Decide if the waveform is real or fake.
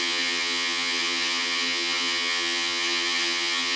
fake